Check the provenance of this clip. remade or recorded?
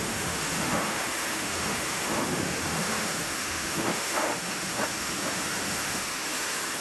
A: remade